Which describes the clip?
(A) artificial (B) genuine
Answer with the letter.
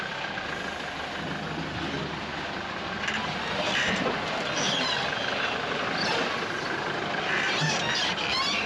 B